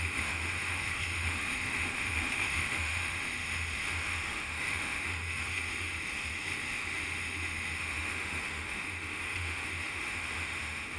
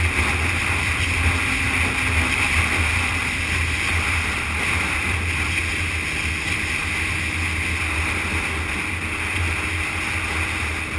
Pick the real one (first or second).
second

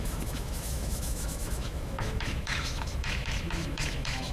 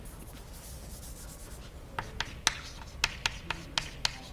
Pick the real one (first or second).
second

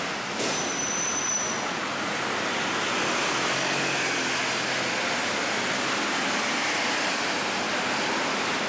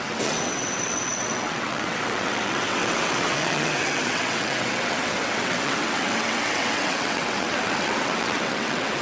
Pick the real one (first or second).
first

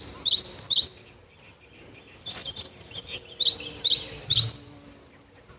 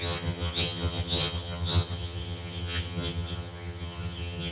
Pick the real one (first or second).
first